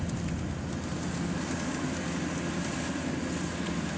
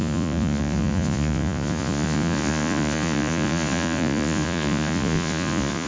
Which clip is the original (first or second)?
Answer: first